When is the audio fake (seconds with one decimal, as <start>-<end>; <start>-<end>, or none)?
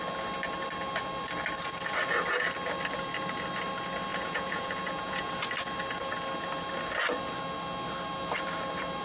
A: 4.1-5.3